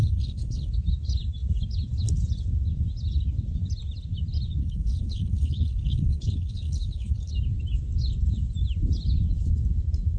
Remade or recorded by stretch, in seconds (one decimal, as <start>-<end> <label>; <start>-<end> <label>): 0.0-0.7 remade; 0.7-4.6 recorded; 4.6-7.3 remade; 7.3-10.2 recorded